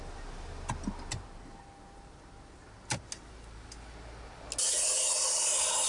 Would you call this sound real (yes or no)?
yes